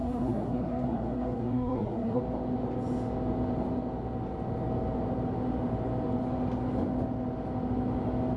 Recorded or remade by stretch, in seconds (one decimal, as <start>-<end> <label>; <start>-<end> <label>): 0.0-2.2 remade; 2.2-8.4 recorded